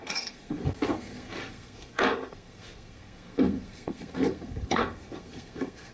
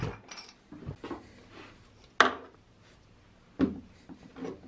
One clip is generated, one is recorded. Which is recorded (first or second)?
second